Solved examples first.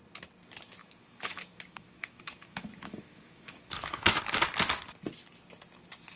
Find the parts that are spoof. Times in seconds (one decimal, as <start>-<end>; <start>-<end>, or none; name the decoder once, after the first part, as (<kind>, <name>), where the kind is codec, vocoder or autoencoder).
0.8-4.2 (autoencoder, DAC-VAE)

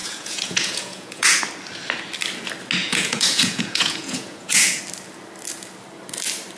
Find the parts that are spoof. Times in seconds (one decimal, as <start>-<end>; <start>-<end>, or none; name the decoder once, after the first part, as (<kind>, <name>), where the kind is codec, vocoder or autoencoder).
0.0-1.4 (vocoder, Vocos); 2.8-4.8

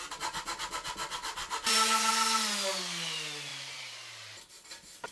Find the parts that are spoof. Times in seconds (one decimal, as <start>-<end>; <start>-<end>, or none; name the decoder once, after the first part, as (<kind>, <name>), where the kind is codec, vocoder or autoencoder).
1.4-2.1 (vocoder, BigVGAN v2); 3.5-4.4

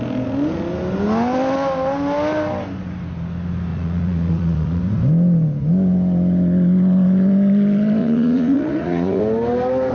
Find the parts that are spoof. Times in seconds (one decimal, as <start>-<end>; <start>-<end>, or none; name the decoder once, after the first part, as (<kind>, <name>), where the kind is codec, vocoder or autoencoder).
3.7-4.8 (vocoder, Vocos); 8.0-9.2

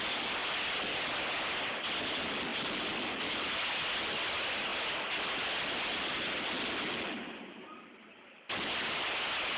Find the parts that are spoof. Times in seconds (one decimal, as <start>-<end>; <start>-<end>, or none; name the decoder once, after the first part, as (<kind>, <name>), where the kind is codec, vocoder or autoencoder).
none

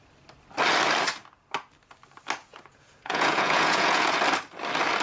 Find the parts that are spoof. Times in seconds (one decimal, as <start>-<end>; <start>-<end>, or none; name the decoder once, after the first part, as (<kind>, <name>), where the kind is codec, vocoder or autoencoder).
2.4-4.2 (vocoder, Vocos)

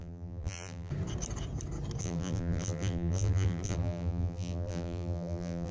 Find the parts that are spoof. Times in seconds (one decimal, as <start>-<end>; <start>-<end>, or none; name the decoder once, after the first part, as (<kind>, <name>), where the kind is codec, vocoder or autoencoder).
0.0-0.9 (vocoder, BigVGAN v2); 2.0-5.7

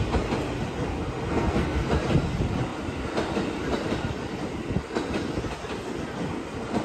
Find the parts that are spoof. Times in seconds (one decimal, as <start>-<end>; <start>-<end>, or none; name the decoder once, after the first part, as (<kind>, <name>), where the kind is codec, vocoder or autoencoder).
1.3-1.9 (codec, SNAC)